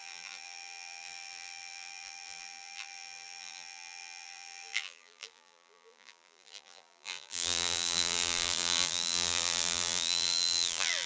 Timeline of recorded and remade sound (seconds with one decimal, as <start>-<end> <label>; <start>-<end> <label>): 0.0-11.1 remade